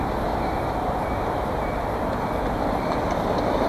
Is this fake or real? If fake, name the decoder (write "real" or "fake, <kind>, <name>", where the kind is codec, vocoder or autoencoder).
real